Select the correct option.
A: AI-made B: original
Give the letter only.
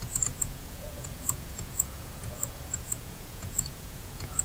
A